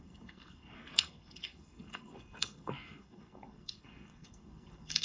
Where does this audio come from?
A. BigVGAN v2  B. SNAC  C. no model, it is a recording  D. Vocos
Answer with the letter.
B